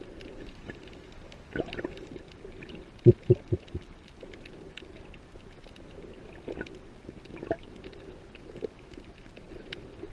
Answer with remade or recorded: recorded